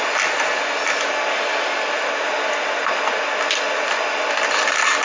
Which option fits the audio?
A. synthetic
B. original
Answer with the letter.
B